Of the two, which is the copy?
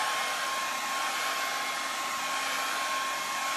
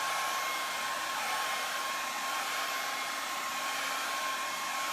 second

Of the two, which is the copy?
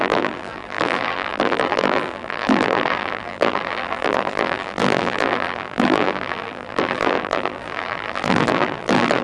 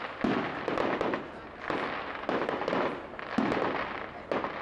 first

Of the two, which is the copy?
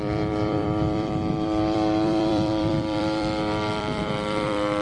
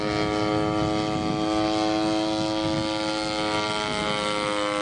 first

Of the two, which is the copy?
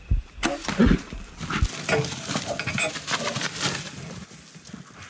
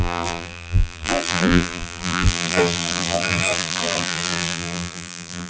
second